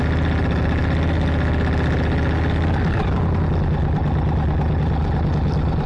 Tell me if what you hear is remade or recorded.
recorded